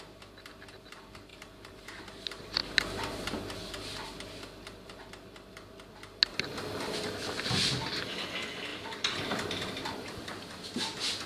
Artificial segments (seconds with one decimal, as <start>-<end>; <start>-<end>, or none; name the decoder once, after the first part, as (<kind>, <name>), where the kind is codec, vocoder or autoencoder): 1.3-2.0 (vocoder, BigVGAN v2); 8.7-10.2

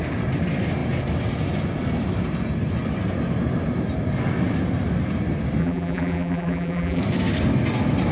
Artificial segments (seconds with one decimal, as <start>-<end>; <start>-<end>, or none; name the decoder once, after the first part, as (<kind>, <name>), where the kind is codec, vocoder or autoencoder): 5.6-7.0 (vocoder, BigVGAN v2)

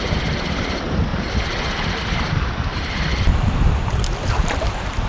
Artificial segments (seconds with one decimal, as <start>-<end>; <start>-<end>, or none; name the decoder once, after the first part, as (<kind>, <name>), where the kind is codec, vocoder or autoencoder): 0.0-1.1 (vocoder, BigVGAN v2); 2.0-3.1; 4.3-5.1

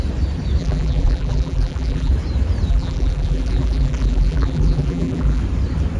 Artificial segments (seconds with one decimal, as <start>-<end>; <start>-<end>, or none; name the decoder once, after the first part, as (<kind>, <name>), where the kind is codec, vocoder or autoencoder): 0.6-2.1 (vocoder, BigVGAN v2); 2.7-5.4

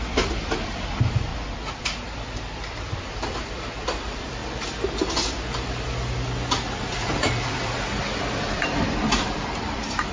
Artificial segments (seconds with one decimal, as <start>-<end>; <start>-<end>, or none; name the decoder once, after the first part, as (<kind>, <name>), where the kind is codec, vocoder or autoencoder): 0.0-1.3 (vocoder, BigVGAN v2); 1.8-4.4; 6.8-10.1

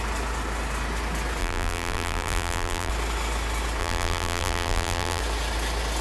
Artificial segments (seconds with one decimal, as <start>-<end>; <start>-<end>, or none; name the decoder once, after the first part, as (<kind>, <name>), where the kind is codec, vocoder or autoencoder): 1.4-2.9 (vocoder, BigVGAN v2); 3.8-5.2

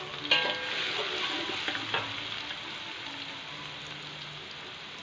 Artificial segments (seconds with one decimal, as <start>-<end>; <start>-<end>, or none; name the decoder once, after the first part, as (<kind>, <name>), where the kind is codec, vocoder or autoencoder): none

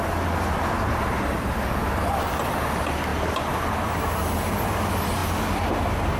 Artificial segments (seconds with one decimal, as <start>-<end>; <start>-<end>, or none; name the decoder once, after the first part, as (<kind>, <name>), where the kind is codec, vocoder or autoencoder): none